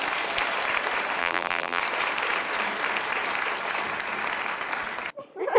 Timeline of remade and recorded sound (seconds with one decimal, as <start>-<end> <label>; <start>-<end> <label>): 0.0-1.2 recorded; 1.2-1.8 remade; 1.8-5.6 recorded